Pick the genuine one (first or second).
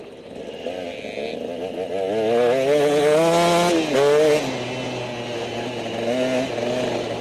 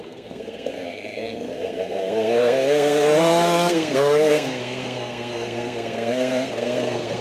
first